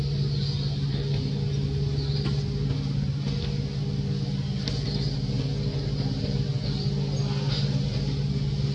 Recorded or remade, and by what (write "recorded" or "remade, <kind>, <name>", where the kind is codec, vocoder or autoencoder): recorded